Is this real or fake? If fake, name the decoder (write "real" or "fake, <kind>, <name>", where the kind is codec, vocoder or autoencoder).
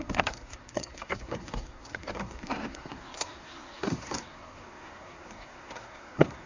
fake, codec, SNAC